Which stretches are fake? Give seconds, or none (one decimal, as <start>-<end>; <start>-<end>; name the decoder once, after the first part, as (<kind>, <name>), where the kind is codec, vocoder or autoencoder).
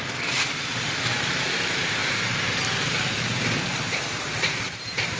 0.0-5.2 (vocoder, BigVGAN v2)